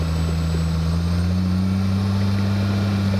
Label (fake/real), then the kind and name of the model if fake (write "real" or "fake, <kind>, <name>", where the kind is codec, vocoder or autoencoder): real